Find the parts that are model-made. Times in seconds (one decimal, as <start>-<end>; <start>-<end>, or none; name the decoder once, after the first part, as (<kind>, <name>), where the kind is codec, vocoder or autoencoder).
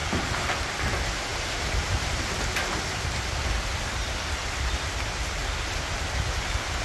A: none